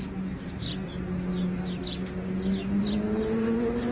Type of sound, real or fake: real